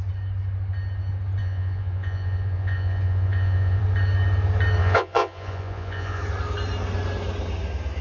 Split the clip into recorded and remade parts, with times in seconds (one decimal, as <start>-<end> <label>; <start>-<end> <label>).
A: 0.0-1.4 recorded; 1.4-3.8 remade; 3.8-4.8 recorded; 4.8-6.2 remade; 6.2-8.0 recorded

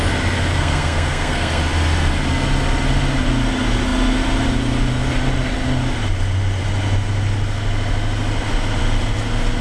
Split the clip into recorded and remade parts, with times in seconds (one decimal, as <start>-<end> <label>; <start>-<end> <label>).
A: 0.0-0.5 recorded; 0.5-1.6 remade; 1.6-9.6 recorded

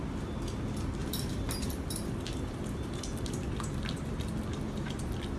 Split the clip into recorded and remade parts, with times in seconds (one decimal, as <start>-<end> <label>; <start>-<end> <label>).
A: 0.0-1.0 recorded; 1.0-4.2 remade; 4.2-5.4 recorded

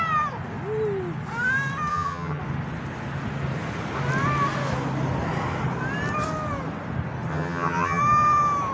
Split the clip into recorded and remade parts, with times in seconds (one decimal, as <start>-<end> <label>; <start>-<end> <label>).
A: 0.0-1.9 recorded; 1.9-2.4 remade; 2.4-7.3 recorded; 7.3-8.0 remade; 8.0-8.7 recorded